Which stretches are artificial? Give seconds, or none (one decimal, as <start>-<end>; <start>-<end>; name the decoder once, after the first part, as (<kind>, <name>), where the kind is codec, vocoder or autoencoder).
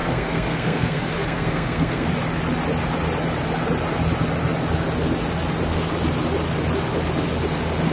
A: 0.0-2.1 (codec, SNAC)